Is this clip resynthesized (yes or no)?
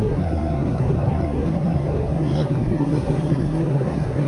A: yes